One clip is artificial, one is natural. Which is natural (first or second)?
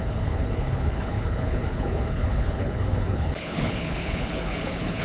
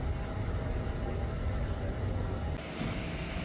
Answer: second